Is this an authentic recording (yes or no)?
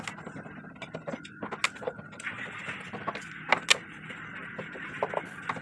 yes